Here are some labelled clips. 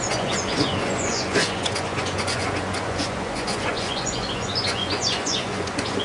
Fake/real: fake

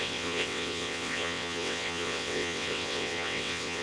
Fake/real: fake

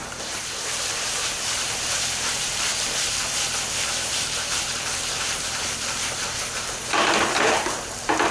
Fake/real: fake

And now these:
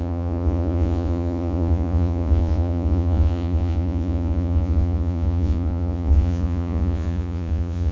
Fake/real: fake